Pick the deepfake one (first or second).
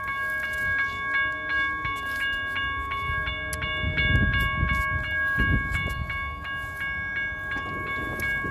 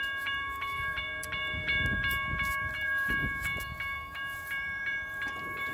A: second